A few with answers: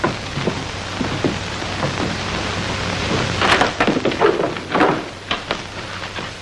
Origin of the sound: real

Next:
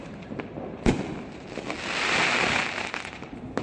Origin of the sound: real